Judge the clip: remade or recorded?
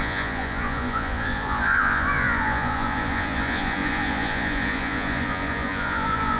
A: remade